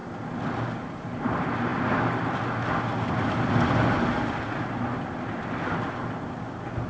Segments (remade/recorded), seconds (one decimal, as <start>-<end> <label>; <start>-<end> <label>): 0.0-6.9 recorded